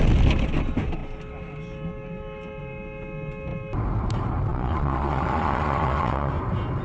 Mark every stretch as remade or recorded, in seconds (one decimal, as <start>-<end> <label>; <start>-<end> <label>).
0.0-4.5 recorded; 4.5-6.3 remade; 6.3-6.8 recorded